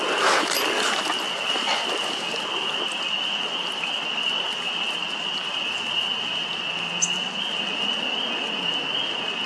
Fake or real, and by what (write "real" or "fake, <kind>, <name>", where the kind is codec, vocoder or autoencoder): real